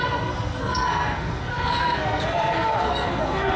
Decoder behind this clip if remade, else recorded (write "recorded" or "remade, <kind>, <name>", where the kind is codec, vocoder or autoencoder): remade, codec, SNAC